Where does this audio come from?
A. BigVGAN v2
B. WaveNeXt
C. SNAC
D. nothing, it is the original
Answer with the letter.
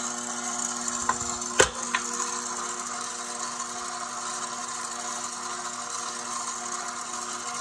D